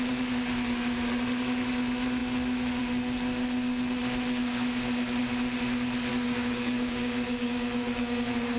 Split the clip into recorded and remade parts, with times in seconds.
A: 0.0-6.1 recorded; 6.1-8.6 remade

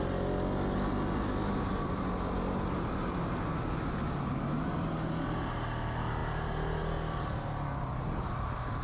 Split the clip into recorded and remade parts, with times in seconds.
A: 0.0-8.8 recorded

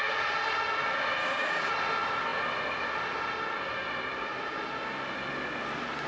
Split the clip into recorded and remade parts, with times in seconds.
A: 0.0-1.2 recorded; 1.2-1.7 remade; 1.7-6.1 recorded

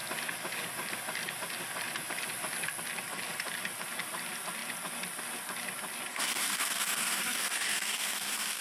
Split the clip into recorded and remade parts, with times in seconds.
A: 0.0-6.1 recorded; 6.1-8.6 remade